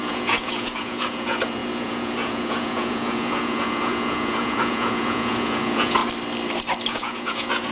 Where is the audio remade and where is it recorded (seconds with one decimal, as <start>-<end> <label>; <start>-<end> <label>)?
0.0-6.0 remade; 6.0-6.9 recorded; 6.9-7.7 remade